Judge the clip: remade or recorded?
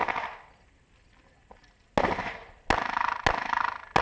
recorded